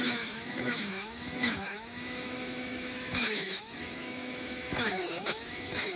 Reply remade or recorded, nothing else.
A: remade